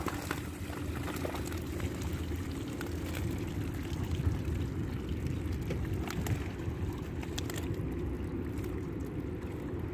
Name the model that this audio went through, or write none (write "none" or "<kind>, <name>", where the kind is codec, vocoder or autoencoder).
none